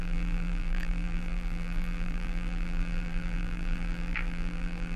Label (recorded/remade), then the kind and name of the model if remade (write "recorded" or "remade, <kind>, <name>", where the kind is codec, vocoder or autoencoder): remade, vocoder, BigVGAN v2